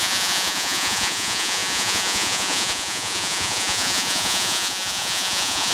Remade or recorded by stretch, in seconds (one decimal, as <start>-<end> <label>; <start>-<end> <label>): 0.0-5.7 remade